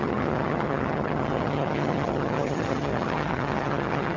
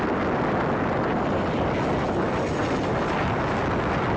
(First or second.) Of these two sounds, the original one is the second